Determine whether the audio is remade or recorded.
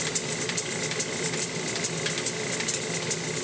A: recorded